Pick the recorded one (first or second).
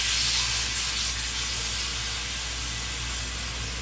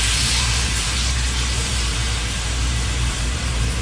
first